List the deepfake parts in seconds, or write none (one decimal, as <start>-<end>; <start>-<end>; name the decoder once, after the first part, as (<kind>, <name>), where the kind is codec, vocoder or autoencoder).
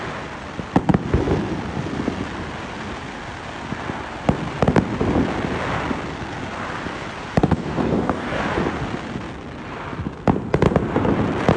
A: 7.4-8.4 (codec, DAC)